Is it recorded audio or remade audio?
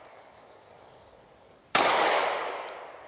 remade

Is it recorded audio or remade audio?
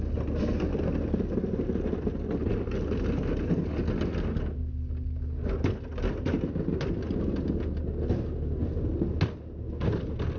recorded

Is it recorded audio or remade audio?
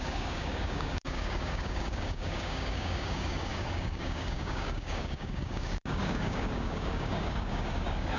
remade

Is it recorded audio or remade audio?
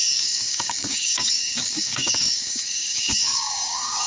remade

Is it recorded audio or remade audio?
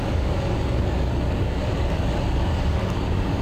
remade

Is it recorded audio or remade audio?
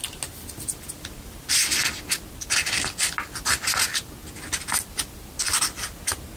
recorded